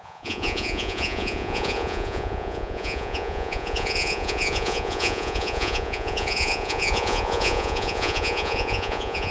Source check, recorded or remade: remade